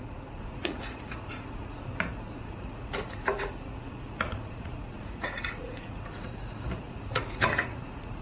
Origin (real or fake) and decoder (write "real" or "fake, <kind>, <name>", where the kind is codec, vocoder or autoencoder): fake, vocoder, Vocos